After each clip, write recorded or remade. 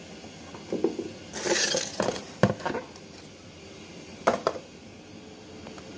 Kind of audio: recorded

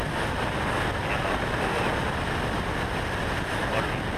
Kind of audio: recorded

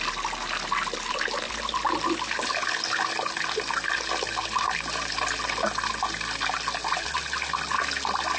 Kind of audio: recorded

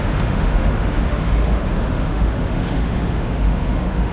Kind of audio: remade